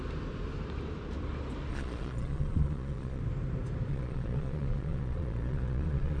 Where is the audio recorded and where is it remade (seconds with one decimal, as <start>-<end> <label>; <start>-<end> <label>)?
0.0-1.7 recorded; 1.7-3.2 remade; 3.2-3.9 recorded; 3.9-6.2 remade